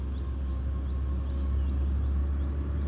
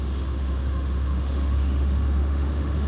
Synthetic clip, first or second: second